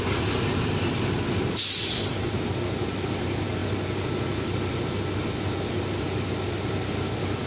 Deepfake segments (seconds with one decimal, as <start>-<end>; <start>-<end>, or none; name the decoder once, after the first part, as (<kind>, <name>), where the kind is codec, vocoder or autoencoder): none